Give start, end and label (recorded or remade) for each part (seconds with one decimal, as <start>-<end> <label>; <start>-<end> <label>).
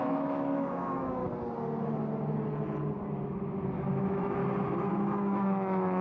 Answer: 0.0-1.2 remade; 1.2-3.9 recorded; 3.9-4.4 remade; 4.4-4.9 recorded; 4.9-6.0 remade